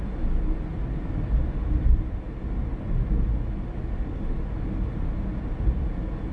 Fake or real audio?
real